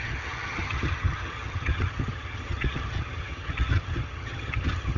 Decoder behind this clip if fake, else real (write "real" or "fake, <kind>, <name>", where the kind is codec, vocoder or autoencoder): fake, vocoder, HiFi-GAN